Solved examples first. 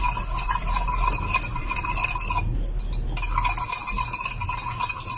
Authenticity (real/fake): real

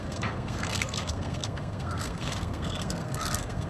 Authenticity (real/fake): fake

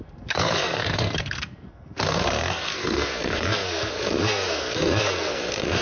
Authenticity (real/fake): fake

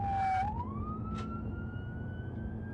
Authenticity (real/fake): real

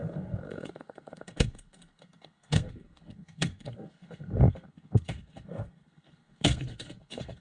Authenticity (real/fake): fake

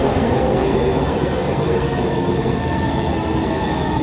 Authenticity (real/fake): fake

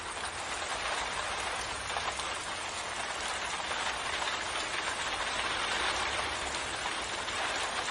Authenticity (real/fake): real